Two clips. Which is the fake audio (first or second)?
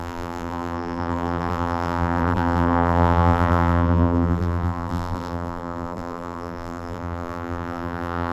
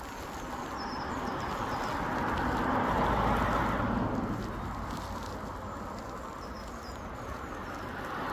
first